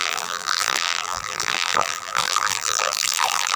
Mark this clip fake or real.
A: fake